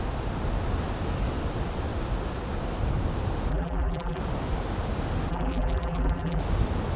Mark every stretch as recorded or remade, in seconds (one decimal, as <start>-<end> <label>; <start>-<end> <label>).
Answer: 0.0-3.5 recorded; 3.5-4.2 remade; 4.2-5.3 recorded; 5.3-6.4 remade; 6.4-7.0 recorded